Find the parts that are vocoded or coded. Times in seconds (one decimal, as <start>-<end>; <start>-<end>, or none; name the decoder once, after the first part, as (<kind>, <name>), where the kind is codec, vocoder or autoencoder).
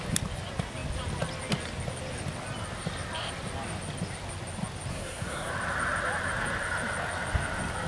4.9-5.5 (codec, SNAC)